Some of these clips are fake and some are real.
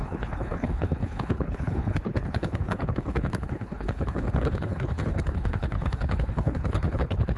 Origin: fake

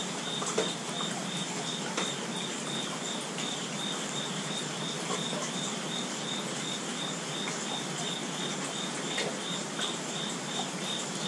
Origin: real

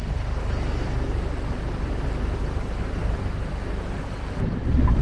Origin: real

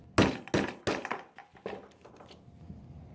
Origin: real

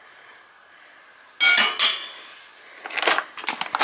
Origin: real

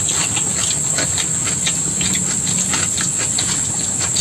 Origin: real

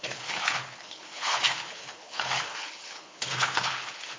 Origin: fake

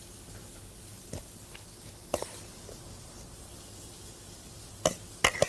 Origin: real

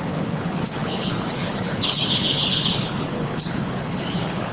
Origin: fake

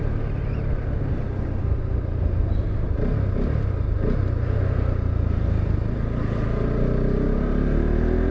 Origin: real